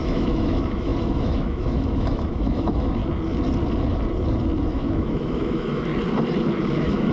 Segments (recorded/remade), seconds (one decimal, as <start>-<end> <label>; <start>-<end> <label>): 0.0-3.0 remade; 3.0-4.7 recorded; 4.7-5.9 remade; 5.9-6.6 recorded; 6.6-7.1 remade